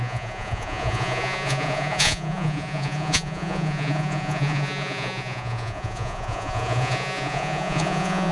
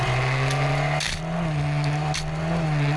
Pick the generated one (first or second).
first